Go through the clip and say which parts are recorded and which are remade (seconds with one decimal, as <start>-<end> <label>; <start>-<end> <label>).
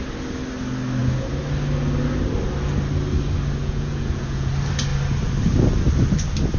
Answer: 0.0-3.6 recorded; 3.6-4.5 remade; 4.5-6.6 recorded